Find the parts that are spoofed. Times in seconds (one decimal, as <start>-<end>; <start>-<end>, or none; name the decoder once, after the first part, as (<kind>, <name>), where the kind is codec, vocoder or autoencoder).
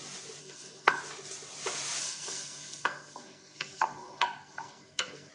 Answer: 0.4-1.0 (codec, SNAC); 2.0-5.3